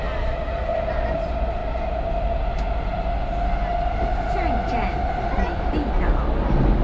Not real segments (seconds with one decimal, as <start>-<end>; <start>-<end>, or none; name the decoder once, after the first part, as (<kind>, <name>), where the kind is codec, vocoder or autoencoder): none